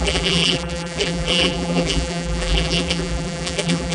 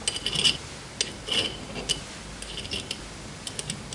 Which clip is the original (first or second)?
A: second